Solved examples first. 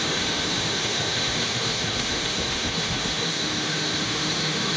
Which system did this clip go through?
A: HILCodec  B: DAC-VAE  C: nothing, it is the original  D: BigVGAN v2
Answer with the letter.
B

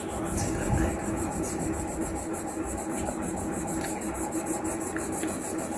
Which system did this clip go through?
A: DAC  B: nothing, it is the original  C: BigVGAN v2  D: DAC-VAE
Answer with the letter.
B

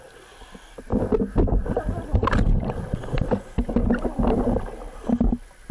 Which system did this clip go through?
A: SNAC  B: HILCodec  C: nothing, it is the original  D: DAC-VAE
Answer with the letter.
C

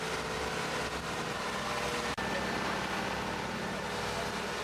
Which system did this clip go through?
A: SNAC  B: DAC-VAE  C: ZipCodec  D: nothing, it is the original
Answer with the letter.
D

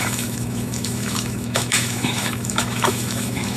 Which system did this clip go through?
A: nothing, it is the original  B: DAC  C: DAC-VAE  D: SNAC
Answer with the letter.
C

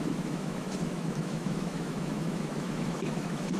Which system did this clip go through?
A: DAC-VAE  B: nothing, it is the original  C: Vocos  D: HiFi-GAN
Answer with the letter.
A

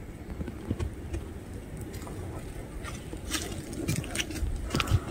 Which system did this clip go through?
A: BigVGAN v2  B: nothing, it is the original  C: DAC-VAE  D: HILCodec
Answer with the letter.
B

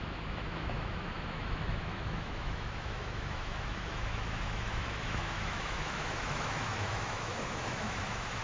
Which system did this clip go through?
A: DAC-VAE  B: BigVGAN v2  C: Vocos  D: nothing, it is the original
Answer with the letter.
A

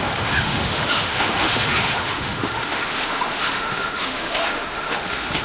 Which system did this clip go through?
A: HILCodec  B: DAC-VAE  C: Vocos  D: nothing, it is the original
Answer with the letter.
B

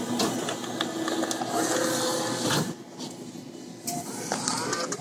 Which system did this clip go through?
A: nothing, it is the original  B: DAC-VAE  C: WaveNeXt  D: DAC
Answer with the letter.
A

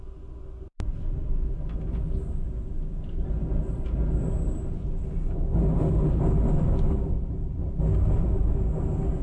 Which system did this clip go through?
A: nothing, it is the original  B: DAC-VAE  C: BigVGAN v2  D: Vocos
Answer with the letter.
A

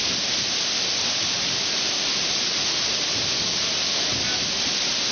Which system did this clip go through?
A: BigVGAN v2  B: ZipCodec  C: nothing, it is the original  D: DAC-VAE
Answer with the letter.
C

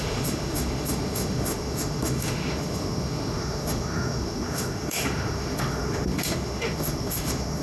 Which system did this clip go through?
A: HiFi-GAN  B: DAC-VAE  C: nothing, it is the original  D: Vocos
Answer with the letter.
B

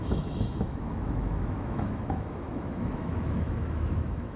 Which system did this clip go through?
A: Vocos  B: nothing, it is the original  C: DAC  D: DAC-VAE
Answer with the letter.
D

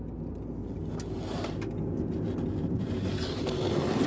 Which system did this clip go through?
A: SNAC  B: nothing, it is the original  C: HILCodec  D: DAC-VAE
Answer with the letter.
B